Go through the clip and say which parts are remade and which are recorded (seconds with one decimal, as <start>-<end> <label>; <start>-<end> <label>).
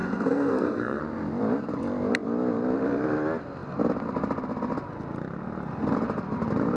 0.0-1.0 remade; 1.0-6.8 recorded